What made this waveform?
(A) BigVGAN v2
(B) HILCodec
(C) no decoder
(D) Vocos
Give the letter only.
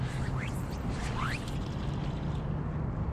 C